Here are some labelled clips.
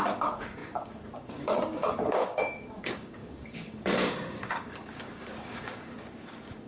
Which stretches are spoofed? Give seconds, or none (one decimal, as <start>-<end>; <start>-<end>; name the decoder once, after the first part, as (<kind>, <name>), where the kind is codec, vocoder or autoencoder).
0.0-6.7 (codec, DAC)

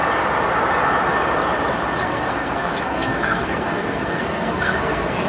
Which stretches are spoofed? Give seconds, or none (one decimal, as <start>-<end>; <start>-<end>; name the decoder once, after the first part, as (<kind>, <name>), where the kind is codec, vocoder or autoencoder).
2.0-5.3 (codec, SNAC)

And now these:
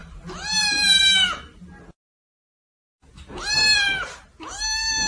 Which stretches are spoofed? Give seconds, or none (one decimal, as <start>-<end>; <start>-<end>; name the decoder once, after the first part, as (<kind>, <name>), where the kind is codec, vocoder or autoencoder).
0.0-1.0 (vocoder, BigVGAN v2)

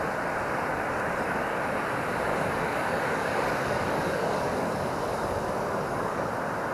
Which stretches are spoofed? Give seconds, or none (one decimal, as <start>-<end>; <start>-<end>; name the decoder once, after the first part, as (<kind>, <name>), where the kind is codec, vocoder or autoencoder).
0.7-1.6 (codec, DAC); 2.3-6.3